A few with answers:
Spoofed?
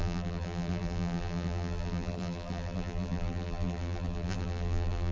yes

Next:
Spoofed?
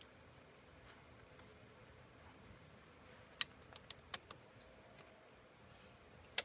no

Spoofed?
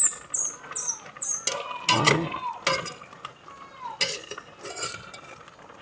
no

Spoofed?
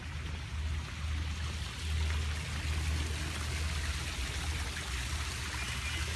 no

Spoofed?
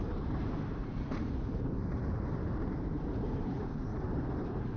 yes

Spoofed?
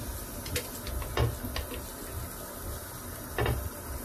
no